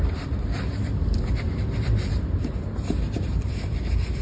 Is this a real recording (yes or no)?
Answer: no